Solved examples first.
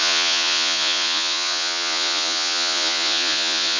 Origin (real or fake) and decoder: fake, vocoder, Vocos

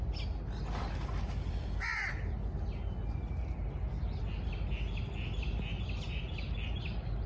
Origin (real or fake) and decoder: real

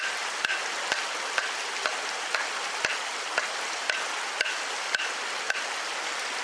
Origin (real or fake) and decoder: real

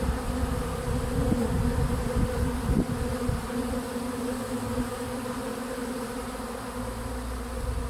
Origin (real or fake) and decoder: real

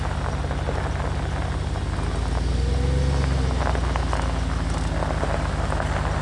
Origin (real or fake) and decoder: real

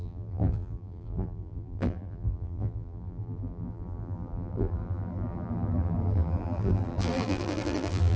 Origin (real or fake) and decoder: fake, vocoder, BigVGAN v2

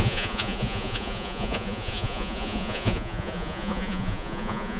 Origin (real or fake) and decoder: fake, vocoder, Vocos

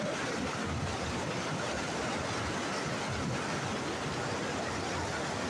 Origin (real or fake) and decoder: real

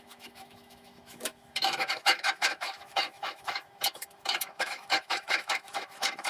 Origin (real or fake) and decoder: fake, autoencoder, DAC-VAE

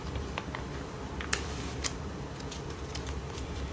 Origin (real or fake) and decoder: fake, vocoder, BigVGAN v2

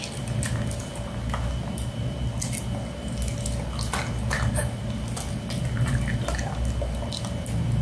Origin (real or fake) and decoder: real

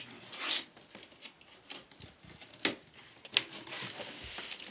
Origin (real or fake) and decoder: real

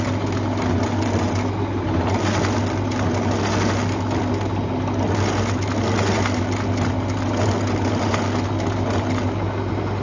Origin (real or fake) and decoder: real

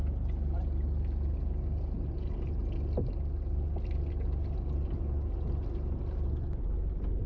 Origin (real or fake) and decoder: real